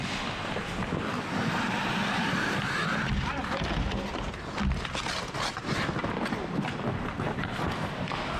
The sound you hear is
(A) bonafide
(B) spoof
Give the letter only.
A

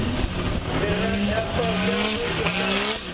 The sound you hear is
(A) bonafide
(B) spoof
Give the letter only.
A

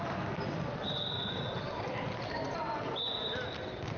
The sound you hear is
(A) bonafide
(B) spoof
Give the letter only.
A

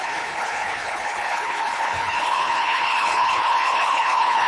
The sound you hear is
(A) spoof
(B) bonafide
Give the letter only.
A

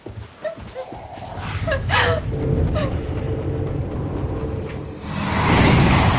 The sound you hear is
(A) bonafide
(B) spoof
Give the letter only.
A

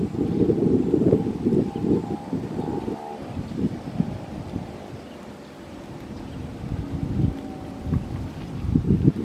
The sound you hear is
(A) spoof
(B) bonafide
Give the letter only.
A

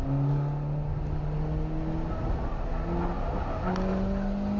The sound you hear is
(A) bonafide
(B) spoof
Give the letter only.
A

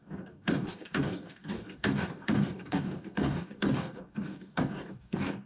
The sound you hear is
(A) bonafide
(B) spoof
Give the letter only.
B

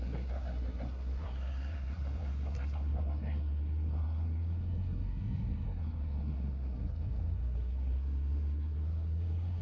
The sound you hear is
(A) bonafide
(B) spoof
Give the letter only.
B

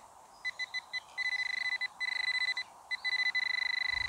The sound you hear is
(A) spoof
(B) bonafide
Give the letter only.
B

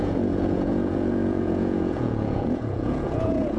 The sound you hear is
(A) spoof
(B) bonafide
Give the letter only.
A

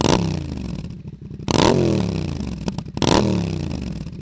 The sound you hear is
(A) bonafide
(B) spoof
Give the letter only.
A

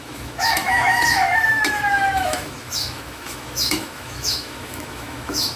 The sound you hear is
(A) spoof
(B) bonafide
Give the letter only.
A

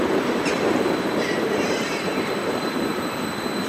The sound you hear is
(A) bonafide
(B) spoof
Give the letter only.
B